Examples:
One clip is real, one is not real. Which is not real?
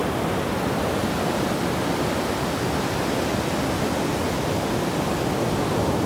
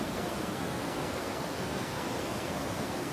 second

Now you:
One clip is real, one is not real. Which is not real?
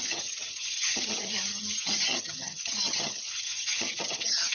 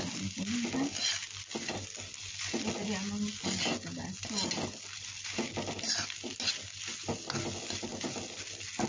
first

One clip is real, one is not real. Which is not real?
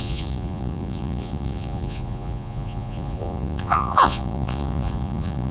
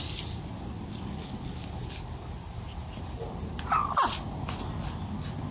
first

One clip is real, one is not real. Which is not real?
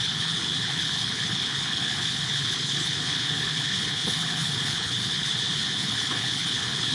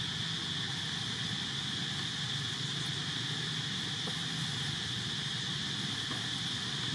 first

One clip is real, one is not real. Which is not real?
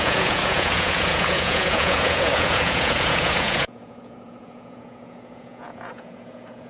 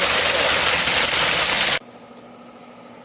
first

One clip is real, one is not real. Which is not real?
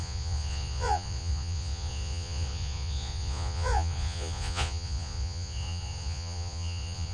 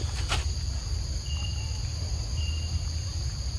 first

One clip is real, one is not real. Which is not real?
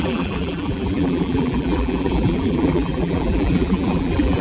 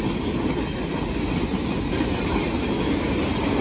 first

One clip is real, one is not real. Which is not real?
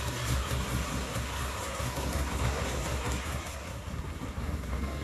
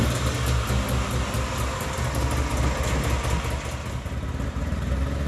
first